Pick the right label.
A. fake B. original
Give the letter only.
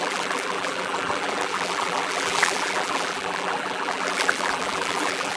A